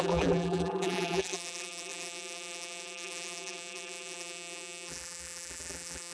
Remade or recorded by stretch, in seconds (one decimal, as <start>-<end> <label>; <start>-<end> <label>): 0.0-6.1 remade